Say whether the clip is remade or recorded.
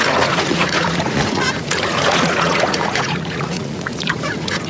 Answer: remade